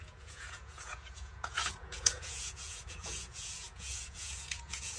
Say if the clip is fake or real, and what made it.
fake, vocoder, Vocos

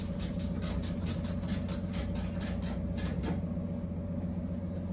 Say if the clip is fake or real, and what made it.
real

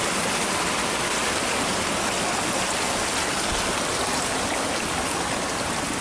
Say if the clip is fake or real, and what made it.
real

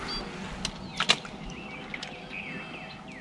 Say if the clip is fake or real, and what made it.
real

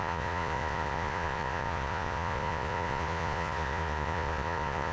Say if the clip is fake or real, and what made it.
fake, vocoder, Vocos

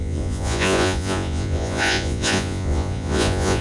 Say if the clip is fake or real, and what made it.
fake, vocoder, Vocos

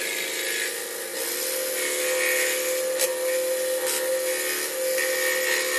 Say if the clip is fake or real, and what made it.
real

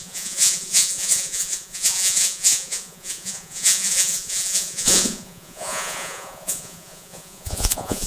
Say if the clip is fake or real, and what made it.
fake, vocoder, Vocos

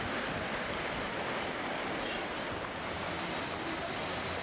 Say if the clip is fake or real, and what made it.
real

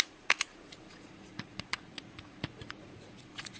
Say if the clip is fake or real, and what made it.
fake, vocoder, Vocos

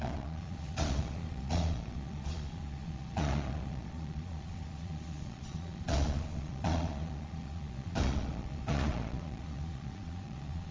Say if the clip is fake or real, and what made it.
fake, vocoder, Vocos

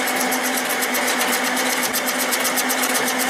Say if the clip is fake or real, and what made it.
real